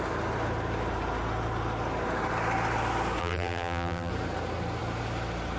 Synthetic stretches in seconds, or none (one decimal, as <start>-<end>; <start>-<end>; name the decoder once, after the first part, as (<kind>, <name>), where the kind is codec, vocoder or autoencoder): 3.2-4.1 (vocoder, BigVGAN v2)